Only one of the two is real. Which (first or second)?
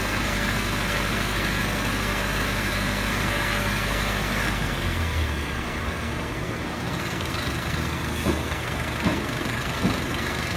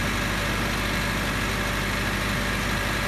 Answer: second